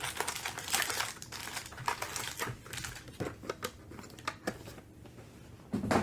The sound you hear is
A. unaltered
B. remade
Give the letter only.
A